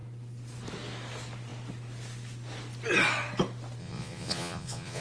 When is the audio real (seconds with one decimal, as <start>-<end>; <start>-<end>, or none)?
0.0-3.8